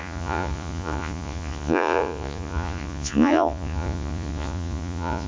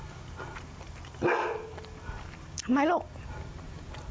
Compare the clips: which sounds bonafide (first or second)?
second